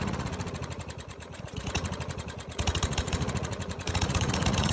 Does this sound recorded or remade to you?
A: remade